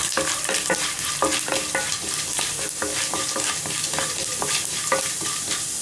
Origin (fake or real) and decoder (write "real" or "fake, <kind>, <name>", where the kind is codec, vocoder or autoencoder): real